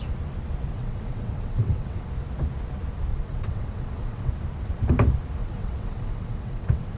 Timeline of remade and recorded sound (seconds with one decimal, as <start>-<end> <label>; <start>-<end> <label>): 0.0-0.7 recorded; 0.7-2.1 remade; 2.1-3.1 recorded; 3.1-4.3 remade; 4.3-5.4 recorded; 5.4-7.0 remade